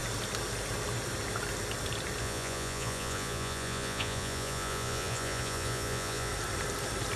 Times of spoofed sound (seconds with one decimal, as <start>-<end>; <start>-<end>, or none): 2.2-6.3